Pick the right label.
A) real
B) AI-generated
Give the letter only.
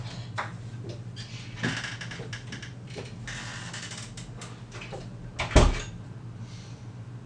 A